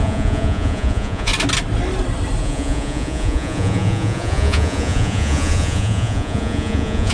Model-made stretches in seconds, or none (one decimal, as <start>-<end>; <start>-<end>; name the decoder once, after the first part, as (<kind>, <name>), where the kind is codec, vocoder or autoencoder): 0.0-1.3 (vocoder, Vocos); 2.4-7.1